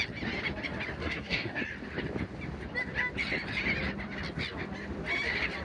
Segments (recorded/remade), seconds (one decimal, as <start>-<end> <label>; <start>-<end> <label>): 0.0-1.0 recorded; 1.0-1.6 remade; 1.6-5.6 recorded